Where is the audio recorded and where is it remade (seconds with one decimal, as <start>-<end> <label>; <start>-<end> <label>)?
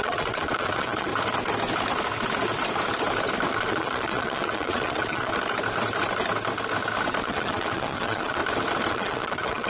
0.0-1.1 remade; 1.1-3.6 recorded; 3.6-5.3 remade; 5.3-7.2 recorded; 7.2-8.4 remade; 8.4-8.9 recorded; 8.9-9.7 remade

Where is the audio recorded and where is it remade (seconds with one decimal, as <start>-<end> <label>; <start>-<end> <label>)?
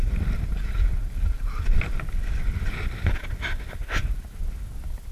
0.0-0.5 recorded; 0.5-1.1 remade; 1.1-5.1 recorded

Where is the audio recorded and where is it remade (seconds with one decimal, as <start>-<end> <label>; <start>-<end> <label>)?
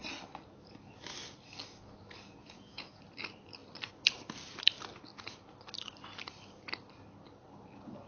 0.0-2.4 recorded; 2.4-3.0 remade; 3.0-8.1 recorded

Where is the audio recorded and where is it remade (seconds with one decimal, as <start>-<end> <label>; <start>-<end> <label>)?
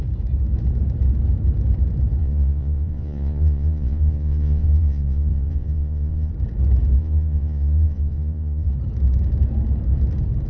0.0-2.2 recorded; 2.2-6.3 remade; 6.3-7.0 recorded; 7.0-8.7 remade; 8.7-10.5 recorded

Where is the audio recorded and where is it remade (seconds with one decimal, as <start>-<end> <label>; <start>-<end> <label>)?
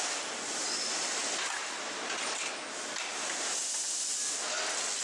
0.0-5.0 recorded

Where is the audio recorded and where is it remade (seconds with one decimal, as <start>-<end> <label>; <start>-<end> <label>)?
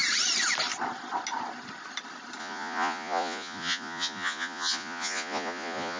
0.0-2.4 recorded; 2.4-6.0 remade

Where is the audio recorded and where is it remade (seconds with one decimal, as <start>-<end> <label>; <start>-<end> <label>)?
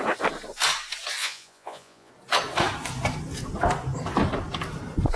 0.0-1.2 recorded; 1.2-2.1 remade; 2.1-5.2 recorded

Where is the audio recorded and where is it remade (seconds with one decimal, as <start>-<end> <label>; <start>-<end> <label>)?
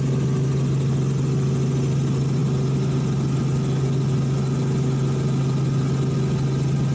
0.0-6.9 recorded